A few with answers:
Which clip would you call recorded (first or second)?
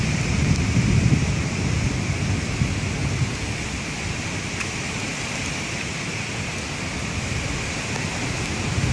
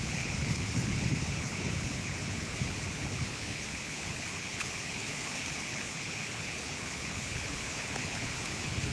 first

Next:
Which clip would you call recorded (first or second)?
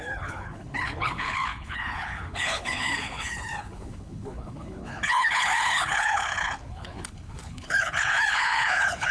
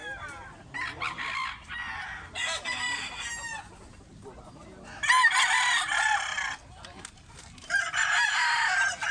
second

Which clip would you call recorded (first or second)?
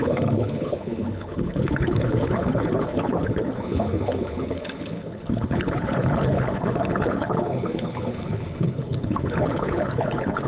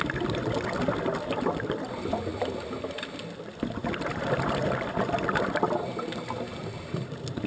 second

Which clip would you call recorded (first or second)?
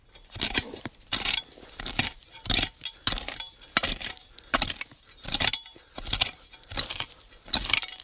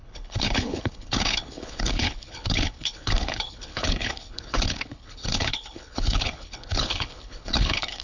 first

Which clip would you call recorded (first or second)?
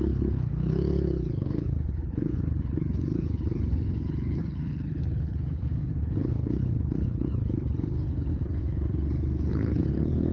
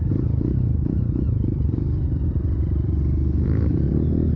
second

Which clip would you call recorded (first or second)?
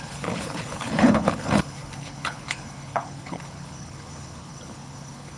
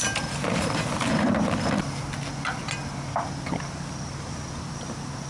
second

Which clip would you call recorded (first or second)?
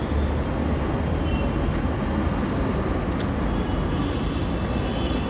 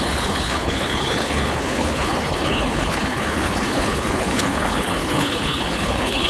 first